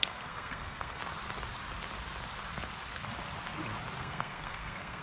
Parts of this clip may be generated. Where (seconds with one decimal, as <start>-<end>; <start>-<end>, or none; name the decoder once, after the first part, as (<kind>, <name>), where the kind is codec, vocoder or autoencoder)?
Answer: 0.0-1.0 (codec, SNAC); 4.0-5.0